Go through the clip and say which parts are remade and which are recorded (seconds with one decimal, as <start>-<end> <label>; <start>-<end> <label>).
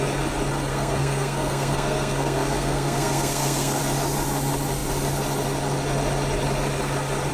0.0-0.7 recorded; 0.7-3.8 remade; 3.8-7.3 recorded